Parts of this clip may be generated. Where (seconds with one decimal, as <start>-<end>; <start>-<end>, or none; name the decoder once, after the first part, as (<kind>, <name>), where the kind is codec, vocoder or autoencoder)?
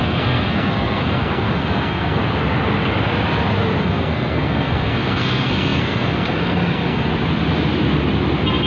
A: 0.0-2.2 (codec, SNAC); 3.8-7.1